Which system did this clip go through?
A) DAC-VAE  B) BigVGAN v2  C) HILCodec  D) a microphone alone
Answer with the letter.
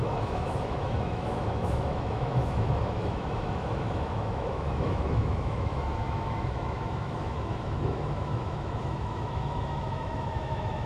A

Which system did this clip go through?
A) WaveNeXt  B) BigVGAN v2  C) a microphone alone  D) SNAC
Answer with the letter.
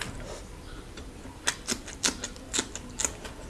C